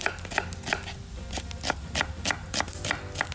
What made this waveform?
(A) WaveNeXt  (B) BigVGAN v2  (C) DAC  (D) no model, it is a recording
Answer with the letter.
D